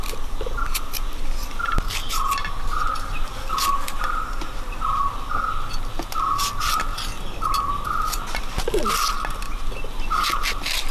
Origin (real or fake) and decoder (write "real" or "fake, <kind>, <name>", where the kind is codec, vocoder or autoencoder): real